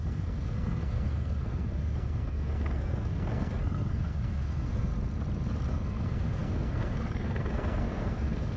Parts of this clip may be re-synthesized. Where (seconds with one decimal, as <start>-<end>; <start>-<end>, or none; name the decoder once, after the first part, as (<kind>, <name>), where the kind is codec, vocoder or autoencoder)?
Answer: 0.0-4.9 (codec, SNAC); 5.7-8.6